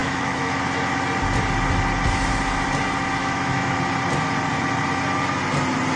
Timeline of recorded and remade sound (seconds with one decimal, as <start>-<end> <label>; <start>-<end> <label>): 0.0-0.6 remade; 0.6-3.2 recorded; 3.2-3.8 remade; 3.8-6.0 recorded